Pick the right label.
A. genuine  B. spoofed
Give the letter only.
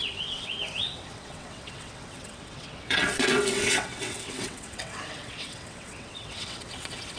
B